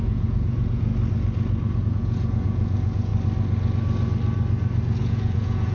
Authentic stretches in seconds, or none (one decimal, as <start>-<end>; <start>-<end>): 0.9-1.8; 3.1-5.0